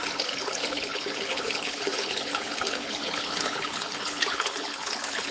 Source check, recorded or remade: remade